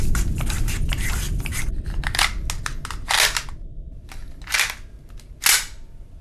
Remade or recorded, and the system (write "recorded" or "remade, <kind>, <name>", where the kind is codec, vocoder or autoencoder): recorded